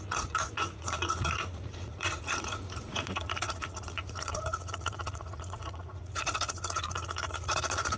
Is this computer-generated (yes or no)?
yes